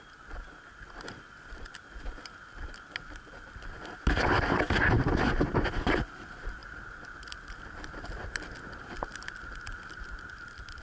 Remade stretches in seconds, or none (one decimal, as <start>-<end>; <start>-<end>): 6.6-7.9